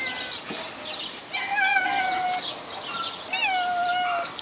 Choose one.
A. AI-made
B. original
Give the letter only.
B